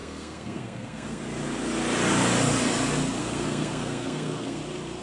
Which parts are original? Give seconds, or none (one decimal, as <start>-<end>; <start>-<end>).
1.2-3.2; 4.6-5.0